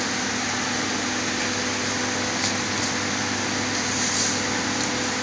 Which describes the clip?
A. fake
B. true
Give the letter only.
B